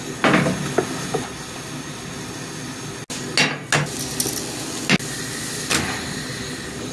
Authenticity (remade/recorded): recorded